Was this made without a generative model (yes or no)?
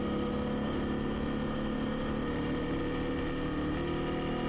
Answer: yes